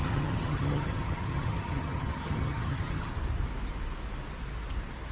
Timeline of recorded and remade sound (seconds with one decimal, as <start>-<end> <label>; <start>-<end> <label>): 0.0-3.1 remade; 3.1-5.1 recorded